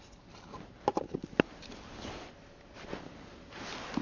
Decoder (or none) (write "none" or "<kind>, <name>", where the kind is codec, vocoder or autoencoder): none